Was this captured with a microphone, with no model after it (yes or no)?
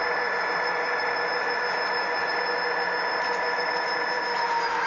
no